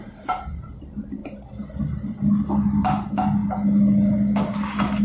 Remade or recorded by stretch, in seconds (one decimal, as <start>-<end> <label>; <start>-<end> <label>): 0.0-5.0 recorded